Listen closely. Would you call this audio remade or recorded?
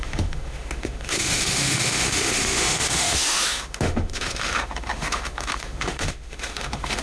remade